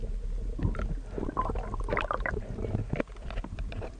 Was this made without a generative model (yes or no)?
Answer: yes